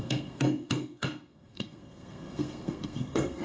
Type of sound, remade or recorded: remade